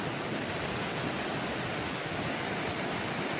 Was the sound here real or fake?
real